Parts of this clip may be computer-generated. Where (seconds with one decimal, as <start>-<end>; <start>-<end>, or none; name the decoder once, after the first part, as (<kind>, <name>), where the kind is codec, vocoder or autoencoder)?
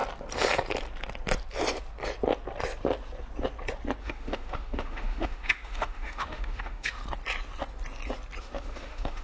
4.0-7.0 (autoencoder, DAC-VAE); 8.4-9.2